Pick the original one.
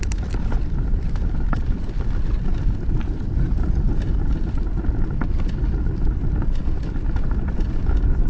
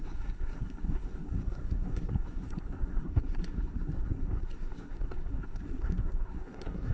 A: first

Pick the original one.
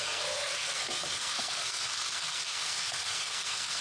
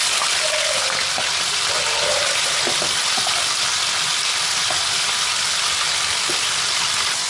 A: second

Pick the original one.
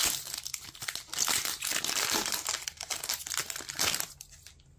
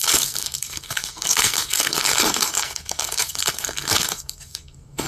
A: first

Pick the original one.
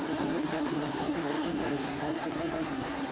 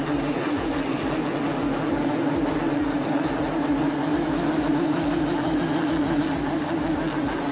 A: second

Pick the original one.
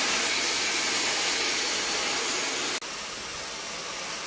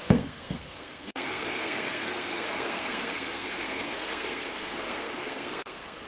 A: first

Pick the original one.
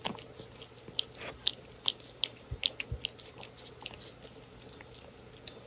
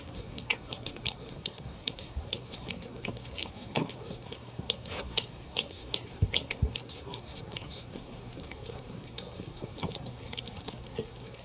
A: first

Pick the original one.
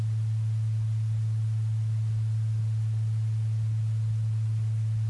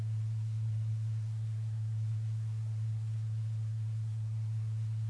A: first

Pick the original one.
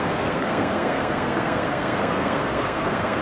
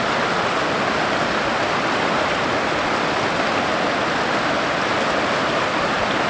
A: second